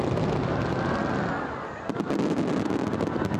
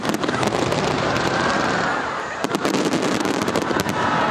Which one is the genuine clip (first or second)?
first